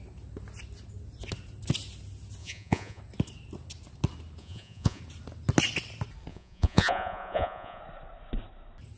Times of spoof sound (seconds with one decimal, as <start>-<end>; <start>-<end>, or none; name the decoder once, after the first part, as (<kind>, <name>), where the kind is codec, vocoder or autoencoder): 2.4-3.0 (vocoder, Vocos); 4.4-5.0; 6.3-7.8